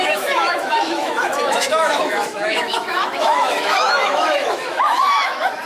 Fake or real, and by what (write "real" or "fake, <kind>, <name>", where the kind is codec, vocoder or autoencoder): fake, autoencoder, DAC-VAE